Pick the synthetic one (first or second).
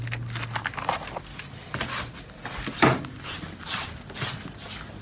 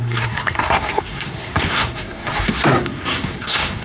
second